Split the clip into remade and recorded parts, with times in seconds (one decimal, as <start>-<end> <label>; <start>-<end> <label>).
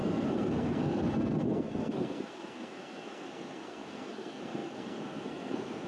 0.0-5.9 remade